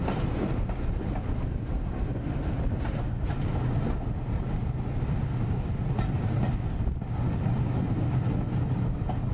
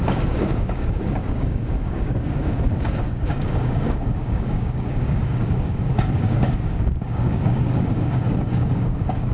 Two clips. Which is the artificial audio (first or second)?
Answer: second